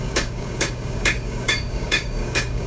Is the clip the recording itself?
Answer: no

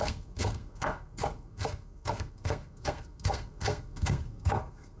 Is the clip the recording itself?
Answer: no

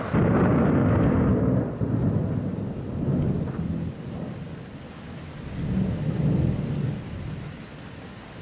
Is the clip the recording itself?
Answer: yes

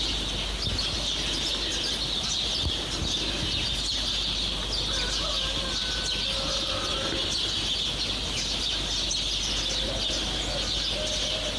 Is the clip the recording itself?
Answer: yes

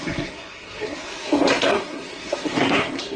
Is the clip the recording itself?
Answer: no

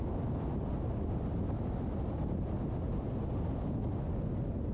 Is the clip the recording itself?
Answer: yes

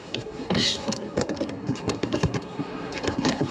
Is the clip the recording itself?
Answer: no